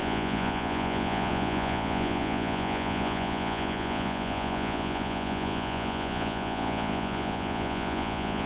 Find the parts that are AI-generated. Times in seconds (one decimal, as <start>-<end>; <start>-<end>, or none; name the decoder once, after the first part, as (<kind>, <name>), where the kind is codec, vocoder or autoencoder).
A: 0.0-8.5 (vocoder, Vocos)